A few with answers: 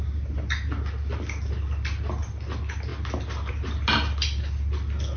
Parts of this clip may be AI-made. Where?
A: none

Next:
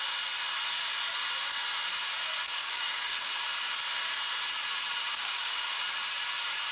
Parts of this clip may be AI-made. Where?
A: 2.6-3.3 (codec, DAC); 5.2-5.8

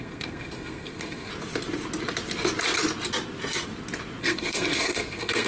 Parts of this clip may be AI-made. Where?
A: 0.0-1.3 (codec, SNAC); 4.2-5.5

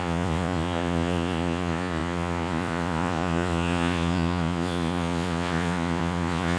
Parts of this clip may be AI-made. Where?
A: 0.0-6.6 (vocoder, Vocos)

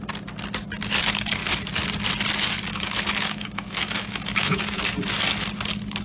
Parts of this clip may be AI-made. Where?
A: 2.7-4.8 (autoencoder, DAC-VAE)